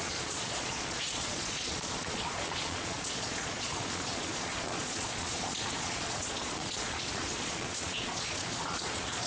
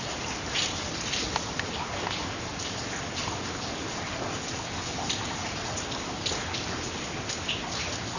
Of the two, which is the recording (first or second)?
second